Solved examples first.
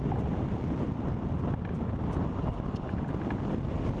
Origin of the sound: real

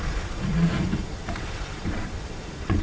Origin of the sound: fake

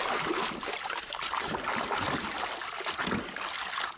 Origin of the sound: real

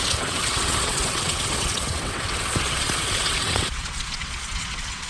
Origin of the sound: fake